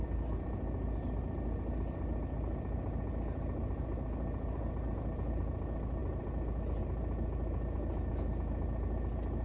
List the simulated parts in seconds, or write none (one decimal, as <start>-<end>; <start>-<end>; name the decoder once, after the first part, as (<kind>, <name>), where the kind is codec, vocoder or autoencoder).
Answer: none